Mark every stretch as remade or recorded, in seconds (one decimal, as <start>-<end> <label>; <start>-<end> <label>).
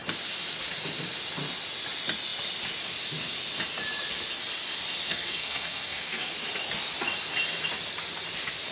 0.0-5.1 recorded; 5.1-6.3 remade; 6.3-8.7 recorded